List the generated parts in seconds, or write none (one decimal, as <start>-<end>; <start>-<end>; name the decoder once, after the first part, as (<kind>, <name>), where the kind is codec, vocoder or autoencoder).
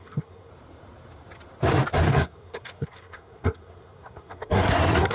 0.0-0.5 (codec, SNAC); 2.1-5.1